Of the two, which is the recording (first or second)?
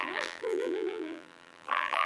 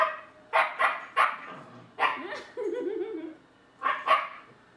second